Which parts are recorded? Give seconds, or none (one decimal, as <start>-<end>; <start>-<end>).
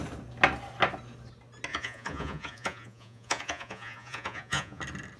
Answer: 0.0-1.7; 4.8-5.2